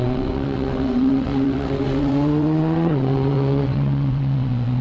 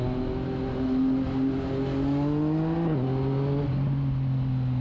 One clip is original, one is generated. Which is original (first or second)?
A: second